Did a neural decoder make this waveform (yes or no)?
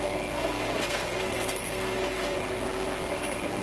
yes